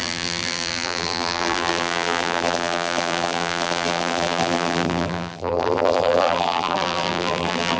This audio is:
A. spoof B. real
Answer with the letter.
A